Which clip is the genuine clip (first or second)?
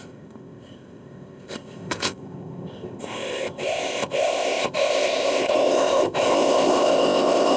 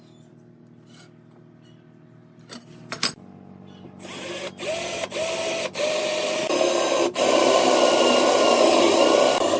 second